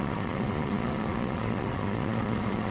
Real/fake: fake